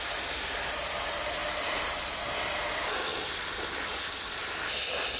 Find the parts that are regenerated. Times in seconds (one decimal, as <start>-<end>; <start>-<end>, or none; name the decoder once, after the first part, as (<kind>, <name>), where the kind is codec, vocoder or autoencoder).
none